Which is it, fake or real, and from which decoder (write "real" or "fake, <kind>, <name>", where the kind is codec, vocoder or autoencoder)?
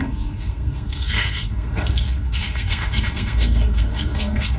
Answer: fake, codec, SNAC